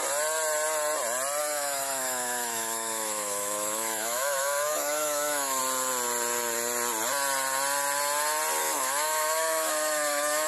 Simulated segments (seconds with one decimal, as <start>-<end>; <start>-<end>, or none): 1.4-5.6; 8.6-10.5